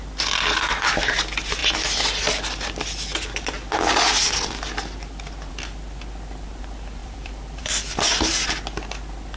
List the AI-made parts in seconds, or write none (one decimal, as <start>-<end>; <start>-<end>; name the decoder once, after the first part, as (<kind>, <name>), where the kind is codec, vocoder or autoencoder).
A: 7.0-7.6 (vocoder, BigVGAN v2)